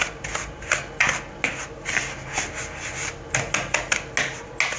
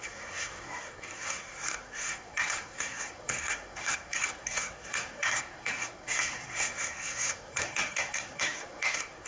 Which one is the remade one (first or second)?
second